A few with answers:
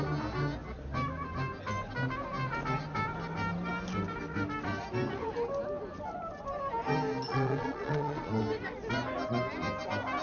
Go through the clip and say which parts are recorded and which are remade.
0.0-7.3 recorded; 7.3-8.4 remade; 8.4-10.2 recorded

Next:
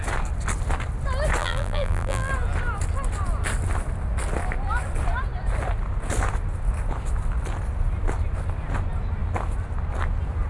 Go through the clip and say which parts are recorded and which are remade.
0.0-1.4 recorded; 1.4-2.3 remade; 2.3-10.5 recorded

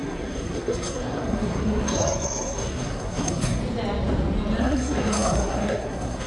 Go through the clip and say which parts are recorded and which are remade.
0.0-3.6 remade; 3.6-4.6 recorded; 4.6-6.3 remade

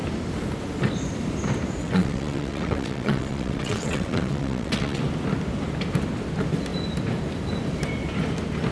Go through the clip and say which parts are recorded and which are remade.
0.0-1.8 recorded; 1.8-5.0 remade; 5.0-8.7 recorded

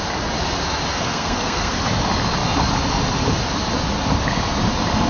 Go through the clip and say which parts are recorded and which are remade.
0.0-0.9 recorded; 0.9-1.8 remade; 1.8-5.1 recorded

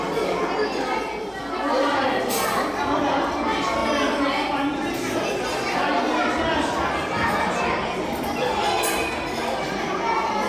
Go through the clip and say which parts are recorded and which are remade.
0.0-10.5 recorded